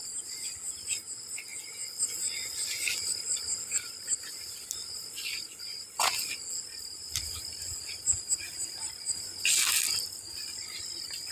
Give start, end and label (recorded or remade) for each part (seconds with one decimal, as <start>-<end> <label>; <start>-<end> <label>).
0.0-11.3 recorded